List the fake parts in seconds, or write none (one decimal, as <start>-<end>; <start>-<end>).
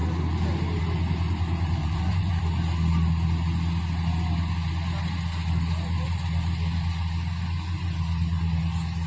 1.8-2.4